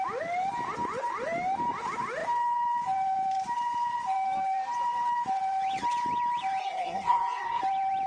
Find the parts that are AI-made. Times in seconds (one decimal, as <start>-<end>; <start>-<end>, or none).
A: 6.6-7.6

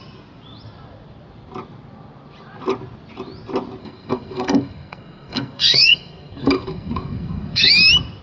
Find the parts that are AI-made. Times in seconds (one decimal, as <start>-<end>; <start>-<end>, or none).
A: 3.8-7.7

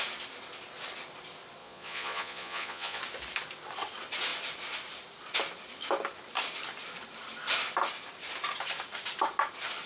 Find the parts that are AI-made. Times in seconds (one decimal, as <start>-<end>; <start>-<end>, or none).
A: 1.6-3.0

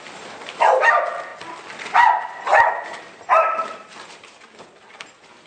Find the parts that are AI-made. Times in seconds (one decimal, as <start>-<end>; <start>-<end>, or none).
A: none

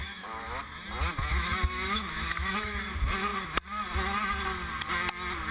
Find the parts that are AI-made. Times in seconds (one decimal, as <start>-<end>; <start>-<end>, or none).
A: 0.0-0.6; 1.3-2.8

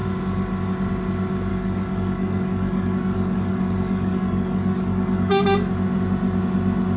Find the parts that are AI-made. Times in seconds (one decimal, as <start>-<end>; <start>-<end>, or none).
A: 1.5-5.7